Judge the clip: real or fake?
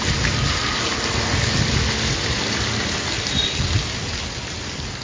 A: real